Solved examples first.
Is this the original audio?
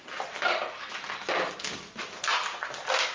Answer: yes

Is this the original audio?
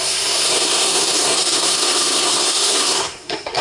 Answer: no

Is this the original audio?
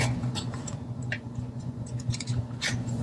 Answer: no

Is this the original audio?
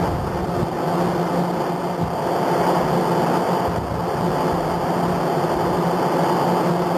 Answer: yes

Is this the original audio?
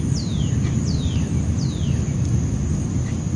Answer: yes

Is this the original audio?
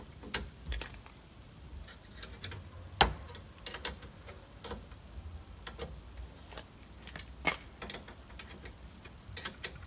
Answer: yes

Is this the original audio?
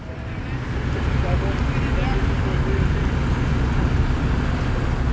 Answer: yes